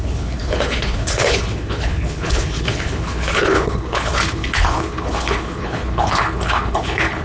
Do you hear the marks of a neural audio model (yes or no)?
yes